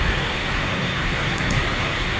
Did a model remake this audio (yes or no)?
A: yes